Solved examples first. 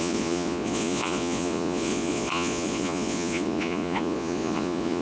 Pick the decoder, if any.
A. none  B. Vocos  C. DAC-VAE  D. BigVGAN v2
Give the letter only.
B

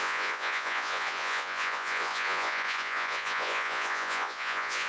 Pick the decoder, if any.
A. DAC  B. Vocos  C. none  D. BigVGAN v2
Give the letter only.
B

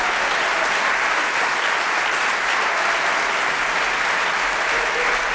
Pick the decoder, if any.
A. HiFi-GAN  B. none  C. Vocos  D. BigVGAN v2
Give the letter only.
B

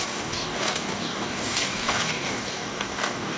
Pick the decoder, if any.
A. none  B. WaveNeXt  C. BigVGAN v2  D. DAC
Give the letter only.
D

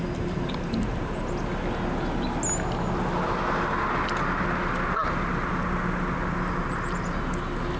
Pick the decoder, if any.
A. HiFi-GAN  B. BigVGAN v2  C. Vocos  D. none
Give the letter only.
D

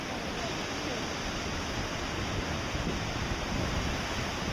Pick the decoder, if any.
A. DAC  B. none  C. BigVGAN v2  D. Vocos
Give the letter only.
B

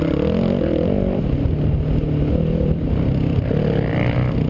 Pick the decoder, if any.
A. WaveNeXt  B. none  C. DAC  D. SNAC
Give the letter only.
B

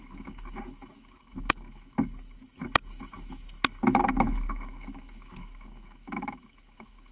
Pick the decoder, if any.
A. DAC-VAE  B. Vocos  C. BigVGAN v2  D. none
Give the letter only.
A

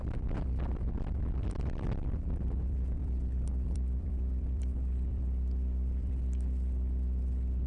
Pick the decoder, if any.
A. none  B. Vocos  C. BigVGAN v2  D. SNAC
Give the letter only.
C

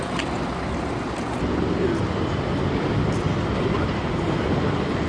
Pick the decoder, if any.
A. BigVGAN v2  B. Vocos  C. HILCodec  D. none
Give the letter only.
D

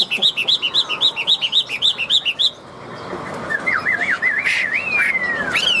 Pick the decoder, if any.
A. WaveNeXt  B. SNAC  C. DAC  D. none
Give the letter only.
D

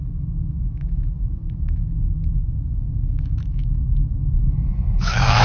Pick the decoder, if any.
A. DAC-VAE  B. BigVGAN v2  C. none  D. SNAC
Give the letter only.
A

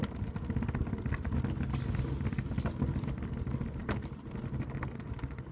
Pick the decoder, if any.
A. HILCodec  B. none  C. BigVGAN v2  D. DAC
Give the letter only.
B